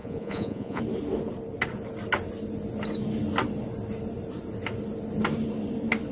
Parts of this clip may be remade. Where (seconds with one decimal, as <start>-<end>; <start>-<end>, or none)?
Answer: 0.0-0.8